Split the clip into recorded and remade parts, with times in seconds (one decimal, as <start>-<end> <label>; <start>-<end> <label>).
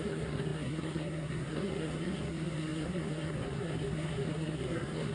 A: 0.0-5.1 remade